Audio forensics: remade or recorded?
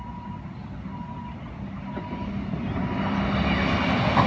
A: recorded